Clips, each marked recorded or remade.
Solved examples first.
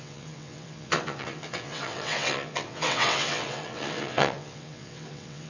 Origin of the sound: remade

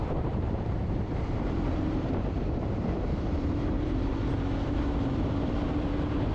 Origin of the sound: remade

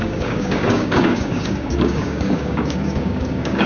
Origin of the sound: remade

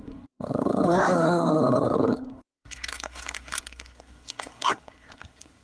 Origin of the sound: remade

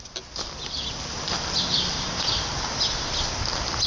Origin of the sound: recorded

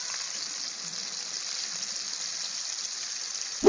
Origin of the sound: recorded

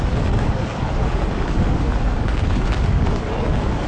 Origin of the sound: remade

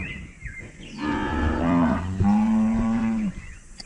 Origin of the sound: remade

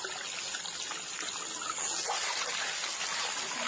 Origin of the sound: recorded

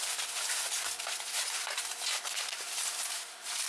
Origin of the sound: recorded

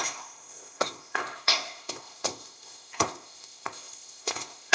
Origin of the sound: remade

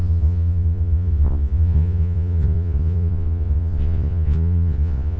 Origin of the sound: remade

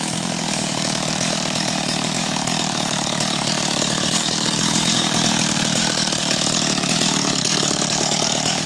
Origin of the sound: remade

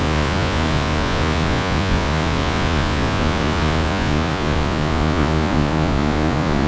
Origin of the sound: remade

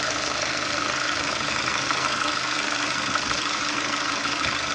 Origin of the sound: remade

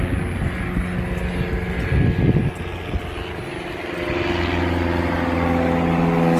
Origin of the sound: recorded